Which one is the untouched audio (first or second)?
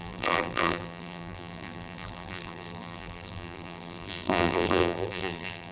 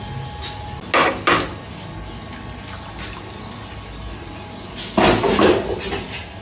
second